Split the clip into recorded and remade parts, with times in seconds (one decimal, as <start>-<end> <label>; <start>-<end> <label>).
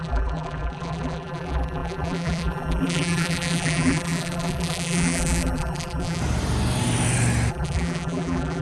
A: 0.0-6.2 remade; 6.2-7.5 recorded; 7.5-8.6 remade